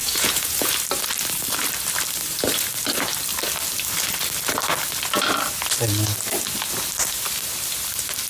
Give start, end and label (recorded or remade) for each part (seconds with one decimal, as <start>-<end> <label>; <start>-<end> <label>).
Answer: 0.0-0.7 remade; 0.7-8.3 recorded